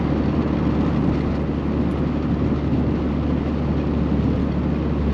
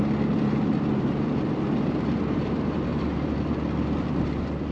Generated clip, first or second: second